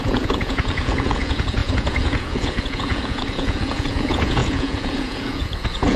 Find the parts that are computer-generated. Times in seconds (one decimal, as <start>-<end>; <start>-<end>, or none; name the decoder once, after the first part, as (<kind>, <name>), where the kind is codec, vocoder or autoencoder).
0.0-6.0 (vocoder, Vocos)